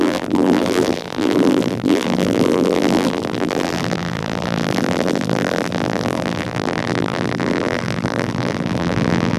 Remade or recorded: remade